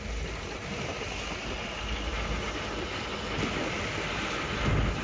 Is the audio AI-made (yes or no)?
no